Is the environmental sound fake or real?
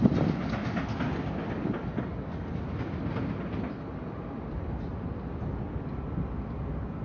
real